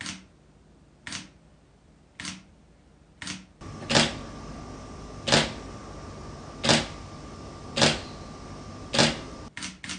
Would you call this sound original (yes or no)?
yes